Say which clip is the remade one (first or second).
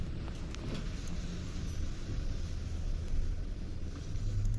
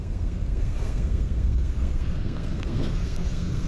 second